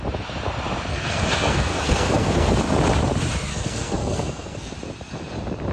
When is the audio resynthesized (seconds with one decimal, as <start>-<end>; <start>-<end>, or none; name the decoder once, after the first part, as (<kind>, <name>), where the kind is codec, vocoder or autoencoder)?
0.9-2.5 (codec, SNAC); 3.5-4.7